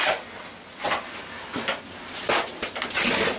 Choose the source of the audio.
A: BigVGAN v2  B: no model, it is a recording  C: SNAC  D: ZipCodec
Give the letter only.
B